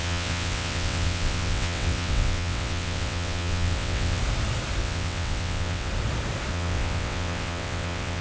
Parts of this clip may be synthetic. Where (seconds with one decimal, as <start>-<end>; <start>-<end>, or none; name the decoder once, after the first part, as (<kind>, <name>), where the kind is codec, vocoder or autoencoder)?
0.0-4.2 (vocoder, WaveNeXt); 4.8-5.9; 6.5-8.2